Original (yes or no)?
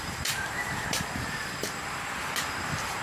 no